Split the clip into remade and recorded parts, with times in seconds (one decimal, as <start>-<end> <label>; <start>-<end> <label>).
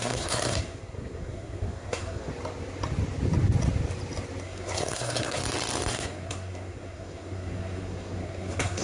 0.0-2.3 remade; 2.3-4.4 recorded; 4.4-5.4 remade; 5.4-5.9 recorded; 5.9-8.8 remade